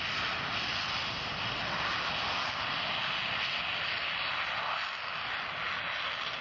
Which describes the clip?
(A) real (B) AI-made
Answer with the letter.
A